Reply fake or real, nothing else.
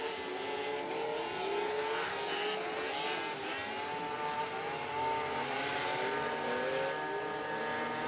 real